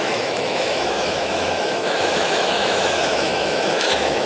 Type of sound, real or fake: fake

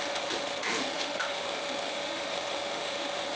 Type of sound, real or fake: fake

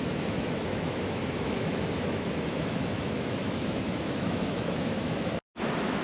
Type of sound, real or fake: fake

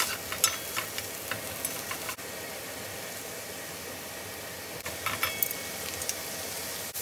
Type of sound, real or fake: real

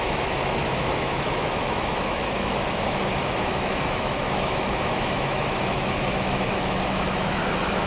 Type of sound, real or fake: fake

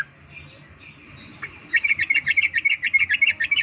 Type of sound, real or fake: real